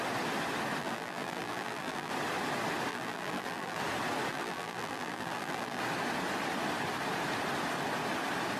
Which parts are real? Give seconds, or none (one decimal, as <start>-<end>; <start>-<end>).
0.0-0.8; 2.1-2.9; 3.8-4.3; 5.8-8.6